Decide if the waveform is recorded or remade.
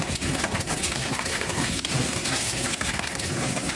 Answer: remade